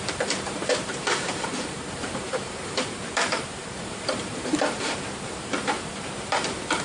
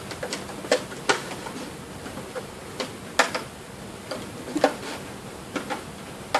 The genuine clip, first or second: second